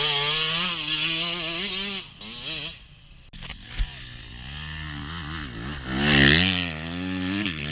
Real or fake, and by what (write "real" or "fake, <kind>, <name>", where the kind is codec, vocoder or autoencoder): real